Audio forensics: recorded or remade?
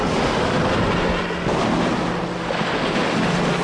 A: recorded